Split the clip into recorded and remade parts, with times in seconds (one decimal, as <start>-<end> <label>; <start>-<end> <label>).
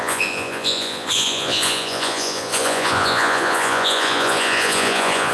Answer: 0.0-5.3 remade